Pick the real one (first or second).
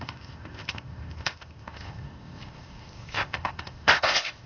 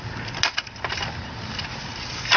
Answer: second